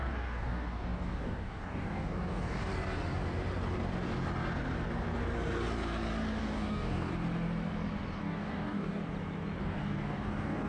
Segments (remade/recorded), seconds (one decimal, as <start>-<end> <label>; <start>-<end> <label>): 0.0-2.7 remade; 2.7-6.4 recorded; 6.4-7.1 remade; 7.1-8.2 recorded; 8.2-9.0 remade; 9.0-9.6 recorded; 9.6-10.7 remade